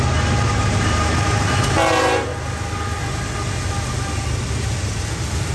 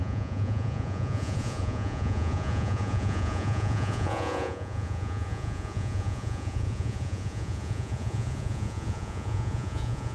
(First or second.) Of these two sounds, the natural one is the first